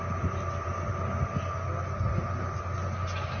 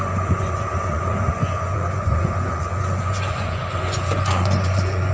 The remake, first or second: second